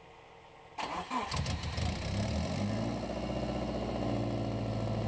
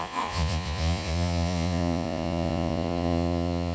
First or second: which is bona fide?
first